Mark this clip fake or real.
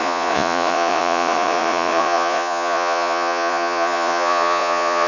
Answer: fake